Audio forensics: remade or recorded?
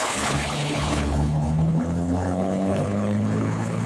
remade